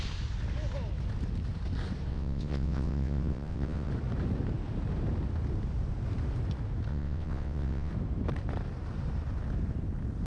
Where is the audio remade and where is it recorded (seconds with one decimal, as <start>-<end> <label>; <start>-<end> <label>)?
0.0-2.1 recorded; 2.1-3.9 remade; 3.9-6.9 recorded; 6.9-7.9 remade; 7.9-10.3 recorded